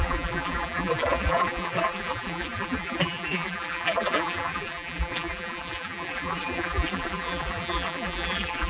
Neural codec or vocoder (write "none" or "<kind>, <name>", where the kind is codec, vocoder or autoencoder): vocoder, BigVGAN v2